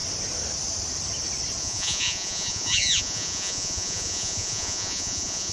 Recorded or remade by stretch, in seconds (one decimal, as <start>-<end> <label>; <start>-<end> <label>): 0.0-1.6 recorded; 1.6-5.5 remade